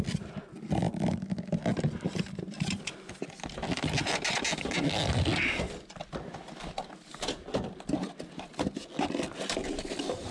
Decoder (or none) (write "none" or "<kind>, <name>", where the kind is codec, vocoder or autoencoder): none